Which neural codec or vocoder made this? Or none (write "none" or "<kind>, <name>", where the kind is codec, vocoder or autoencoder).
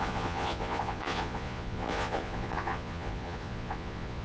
vocoder, Vocos